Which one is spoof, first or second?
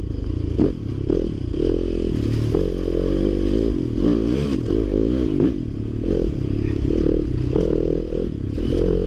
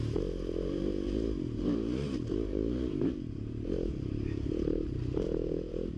second